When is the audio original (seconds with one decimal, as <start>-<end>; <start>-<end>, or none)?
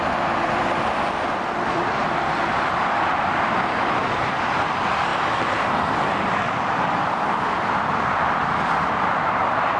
5.1-5.6